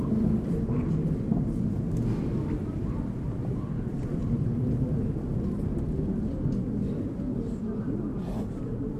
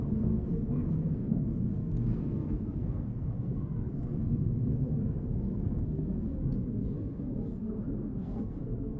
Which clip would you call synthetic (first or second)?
second